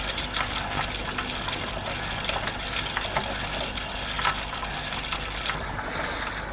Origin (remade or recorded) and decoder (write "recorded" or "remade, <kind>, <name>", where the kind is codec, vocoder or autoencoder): recorded